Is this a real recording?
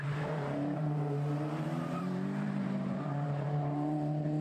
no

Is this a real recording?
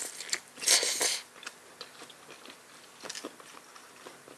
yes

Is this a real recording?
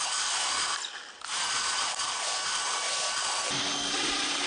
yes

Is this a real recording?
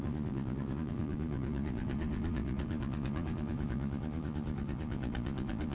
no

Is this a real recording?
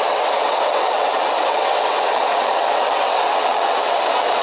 no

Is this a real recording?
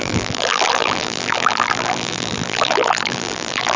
no